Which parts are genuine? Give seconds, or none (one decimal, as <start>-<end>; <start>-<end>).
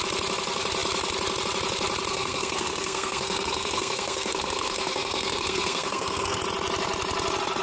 0.0-2.1; 6.4-7.6